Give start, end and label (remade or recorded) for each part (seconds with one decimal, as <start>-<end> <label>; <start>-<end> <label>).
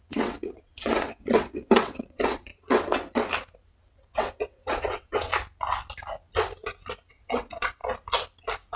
0.0-2.5 remade; 2.5-3.7 recorded; 3.7-5.3 remade; 5.3-7.1 recorded; 7.1-7.8 remade; 7.8-8.8 recorded